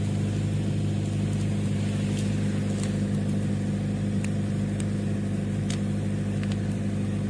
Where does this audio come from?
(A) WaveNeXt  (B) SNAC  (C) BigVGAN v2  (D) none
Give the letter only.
D